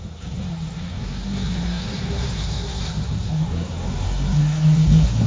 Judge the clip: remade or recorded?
remade